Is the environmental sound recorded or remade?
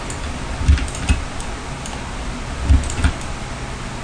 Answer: recorded